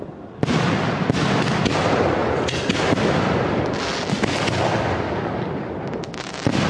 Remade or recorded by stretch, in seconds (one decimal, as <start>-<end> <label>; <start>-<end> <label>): 0.0-6.7 recorded